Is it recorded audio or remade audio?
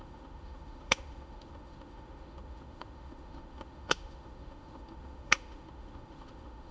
remade